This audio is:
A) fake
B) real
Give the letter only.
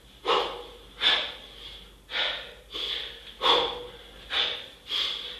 B